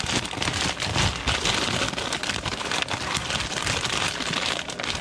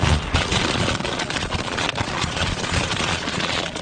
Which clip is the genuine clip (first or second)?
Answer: first